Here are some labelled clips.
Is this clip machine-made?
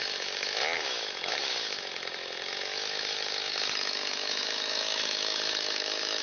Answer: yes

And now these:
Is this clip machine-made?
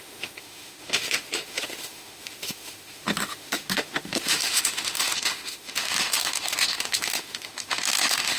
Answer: yes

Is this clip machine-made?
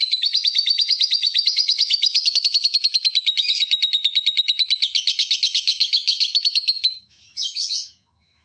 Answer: yes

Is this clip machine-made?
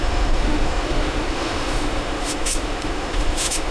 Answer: yes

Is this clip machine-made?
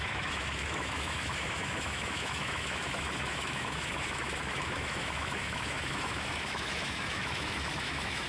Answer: yes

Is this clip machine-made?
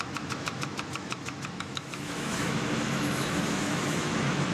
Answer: yes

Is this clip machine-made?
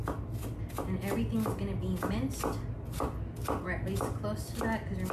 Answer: no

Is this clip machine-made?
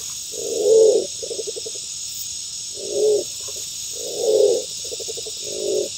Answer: no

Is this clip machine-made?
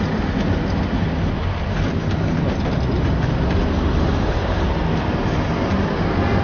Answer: no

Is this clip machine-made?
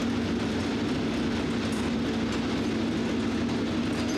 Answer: no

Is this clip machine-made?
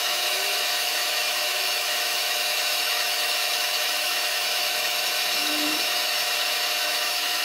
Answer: yes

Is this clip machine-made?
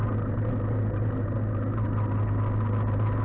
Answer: no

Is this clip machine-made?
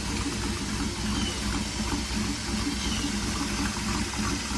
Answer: no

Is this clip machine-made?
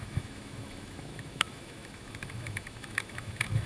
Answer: yes